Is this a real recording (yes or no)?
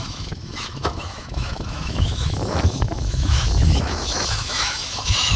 no